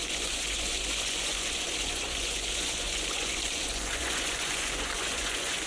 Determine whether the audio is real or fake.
fake